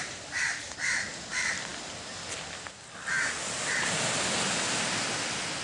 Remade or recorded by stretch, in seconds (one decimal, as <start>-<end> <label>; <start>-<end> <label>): 0.0-5.6 recorded